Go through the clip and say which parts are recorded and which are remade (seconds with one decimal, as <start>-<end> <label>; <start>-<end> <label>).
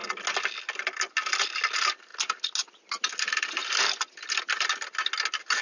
0.0-5.6 recorded